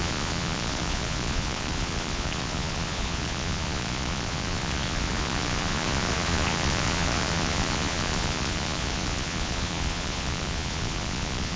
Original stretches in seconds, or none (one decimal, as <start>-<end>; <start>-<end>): none